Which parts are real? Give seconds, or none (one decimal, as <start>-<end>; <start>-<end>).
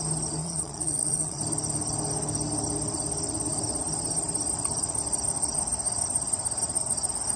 0.0-0.4; 1.4-7.4